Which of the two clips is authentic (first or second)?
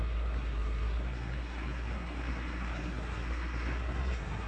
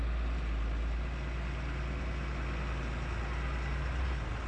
second